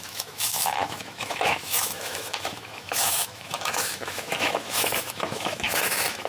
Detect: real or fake fake